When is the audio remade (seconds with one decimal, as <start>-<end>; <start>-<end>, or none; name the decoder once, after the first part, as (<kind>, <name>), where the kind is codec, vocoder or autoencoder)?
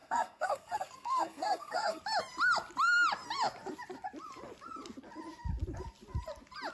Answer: 0.0-2.0 (codec, SNAC)